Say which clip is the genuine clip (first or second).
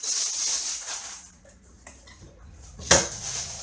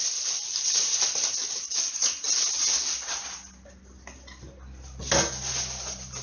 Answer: second